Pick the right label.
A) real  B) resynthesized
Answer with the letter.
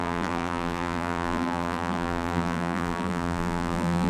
B